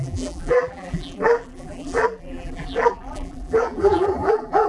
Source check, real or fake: fake